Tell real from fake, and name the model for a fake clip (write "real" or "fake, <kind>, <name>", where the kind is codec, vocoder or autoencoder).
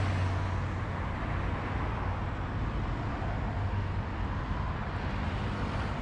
real